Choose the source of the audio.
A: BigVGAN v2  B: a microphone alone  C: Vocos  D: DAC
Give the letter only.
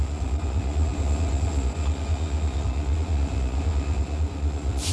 C